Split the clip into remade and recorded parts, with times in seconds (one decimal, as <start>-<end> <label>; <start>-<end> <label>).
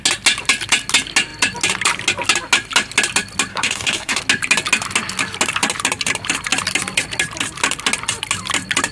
0.0-3.5 recorded; 3.5-4.2 remade; 4.2-8.9 recorded